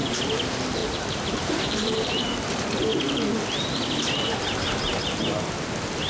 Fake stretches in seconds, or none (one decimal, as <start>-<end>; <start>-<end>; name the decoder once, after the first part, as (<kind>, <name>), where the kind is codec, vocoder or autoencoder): 0.8-2.1 (vocoder, BigVGAN v2)